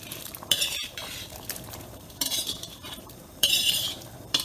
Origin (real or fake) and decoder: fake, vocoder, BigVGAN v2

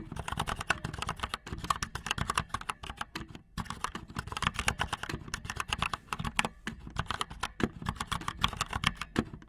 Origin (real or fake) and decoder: real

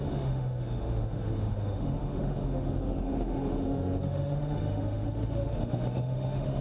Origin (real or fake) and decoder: fake, autoencoder, DAC-VAE